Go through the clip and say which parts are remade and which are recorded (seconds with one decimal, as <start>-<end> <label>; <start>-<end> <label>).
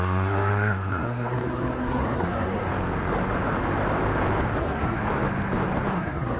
0.0-2.7 remade; 2.7-4.6 recorded; 4.6-5.0 remade; 5.0-5.9 recorded; 5.9-6.4 remade